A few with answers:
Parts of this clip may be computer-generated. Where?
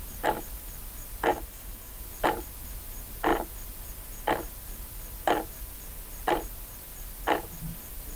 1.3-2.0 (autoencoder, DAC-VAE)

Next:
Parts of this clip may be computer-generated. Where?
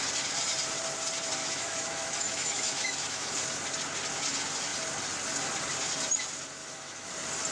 1.4-3.3 (autoencoder, DAC-VAE); 6.6-7.1